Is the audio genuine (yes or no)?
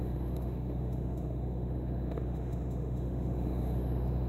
no